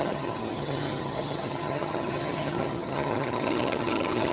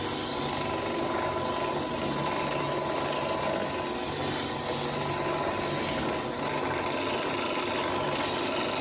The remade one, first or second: first